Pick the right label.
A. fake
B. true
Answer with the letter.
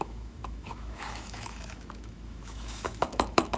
A